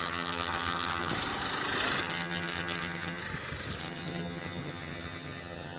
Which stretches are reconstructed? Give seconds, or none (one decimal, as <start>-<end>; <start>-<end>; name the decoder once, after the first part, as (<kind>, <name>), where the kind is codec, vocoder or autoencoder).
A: 0.0-1.1 (vocoder, HiFi-GAN); 2.0-3.2; 3.8-5.8